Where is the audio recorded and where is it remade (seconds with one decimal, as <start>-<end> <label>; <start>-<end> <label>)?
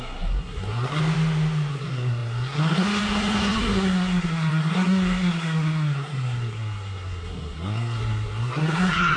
0.0-1.0 remade; 1.0-1.7 recorded; 1.7-9.2 remade